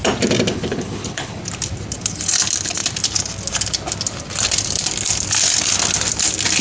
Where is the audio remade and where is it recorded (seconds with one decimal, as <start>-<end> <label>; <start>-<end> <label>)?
0.0-0.5 recorded; 0.5-1.4 remade; 1.4-6.6 recorded